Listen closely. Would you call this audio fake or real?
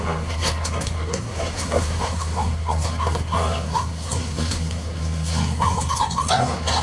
fake